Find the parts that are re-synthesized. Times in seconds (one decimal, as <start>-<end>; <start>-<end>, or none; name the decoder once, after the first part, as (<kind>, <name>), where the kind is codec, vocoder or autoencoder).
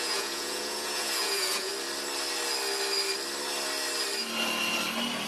0.0-1.7 (vocoder, Vocos)